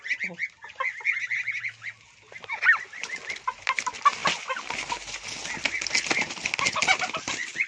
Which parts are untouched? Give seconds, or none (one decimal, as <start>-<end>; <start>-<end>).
0.0-7.7